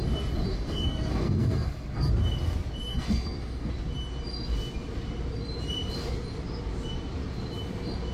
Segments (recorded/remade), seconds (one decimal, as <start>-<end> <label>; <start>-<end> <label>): 0.0-0.5 recorded; 0.5-2.1 remade; 2.1-2.9 recorded; 2.9-3.7 remade; 3.7-8.1 recorded